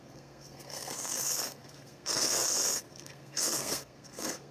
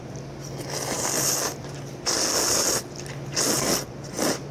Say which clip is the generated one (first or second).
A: first